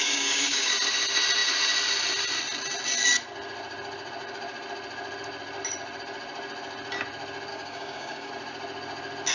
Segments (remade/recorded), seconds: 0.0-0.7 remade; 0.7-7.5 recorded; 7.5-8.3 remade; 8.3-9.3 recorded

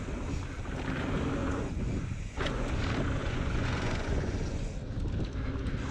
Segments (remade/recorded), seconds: 0.0-1.4 recorded; 1.4-2.7 remade; 2.7-3.2 recorded; 3.2-4.7 remade; 4.7-5.9 recorded

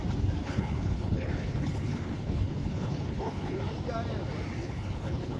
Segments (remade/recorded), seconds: 0.0-0.4 recorded; 0.4-3.6 remade; 3.6-4.6 recorded; 4.6-5.4 remade

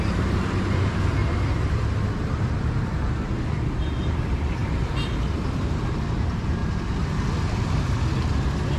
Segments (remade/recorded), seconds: 0.0-4.6 remade; 4.6-5.3 recorded; 5.3-6.6 remade; 6.6-8.2 recorded; 8.2-8.8 remade

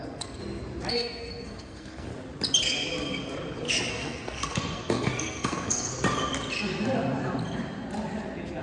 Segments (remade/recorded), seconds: 0.0-0.4 remade; 0.4-0.9 recorded; 0.9-2.1 remade; 2.1-3.9 recorded; 3.9-5.9 remade; 5.9-8.6 recorded